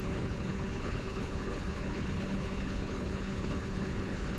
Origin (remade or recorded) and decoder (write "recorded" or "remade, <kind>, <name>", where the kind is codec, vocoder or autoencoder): remade, codec, HILCodec